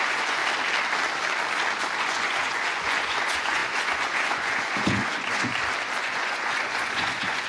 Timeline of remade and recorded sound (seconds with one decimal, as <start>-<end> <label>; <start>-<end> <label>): 0.0-0.4 remade; 0.4-2.0 recorded; 2.0-5.5 remade; 5.5-6.0 recorded; 6.0-7.5 remade